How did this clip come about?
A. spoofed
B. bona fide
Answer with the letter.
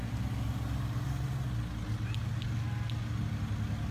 B